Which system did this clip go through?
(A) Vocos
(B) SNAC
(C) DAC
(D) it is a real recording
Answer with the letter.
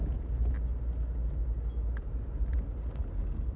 D